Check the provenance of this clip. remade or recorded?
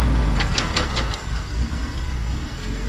remade